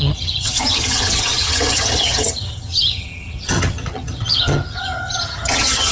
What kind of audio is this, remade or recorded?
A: remade